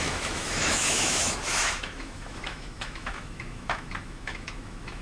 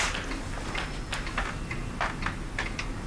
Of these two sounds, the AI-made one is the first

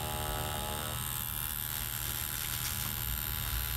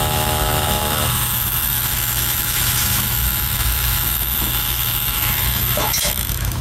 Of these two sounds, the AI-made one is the second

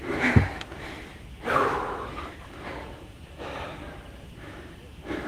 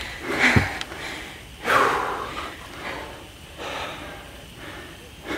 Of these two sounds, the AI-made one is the first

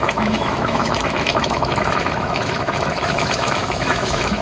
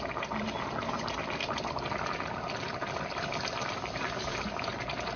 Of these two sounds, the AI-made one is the first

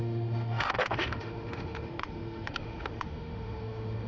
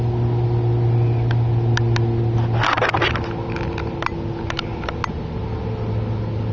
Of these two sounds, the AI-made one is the first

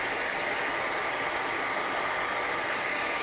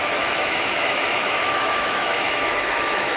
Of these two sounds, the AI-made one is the second